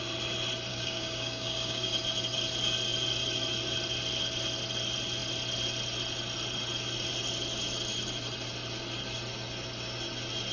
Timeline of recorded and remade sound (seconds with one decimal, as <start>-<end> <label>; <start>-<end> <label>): 0.0-0.7 recorded; 0.7-1.9 remade; 1.9-10.5 recorded